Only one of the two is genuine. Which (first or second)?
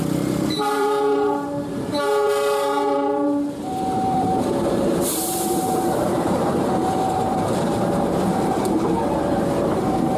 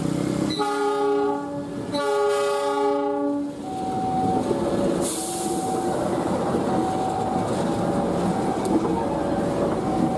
second